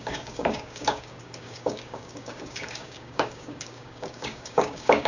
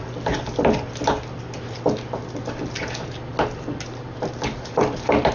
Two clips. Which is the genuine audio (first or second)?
second